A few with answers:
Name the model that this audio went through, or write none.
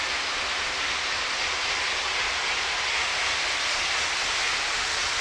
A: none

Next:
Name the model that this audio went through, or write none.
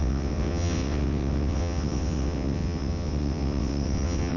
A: vocoder, WaveNeXt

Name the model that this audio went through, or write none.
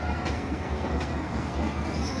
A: codec, SNAC